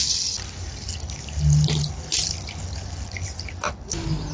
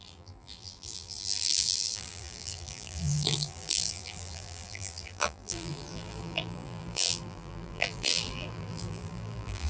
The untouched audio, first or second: first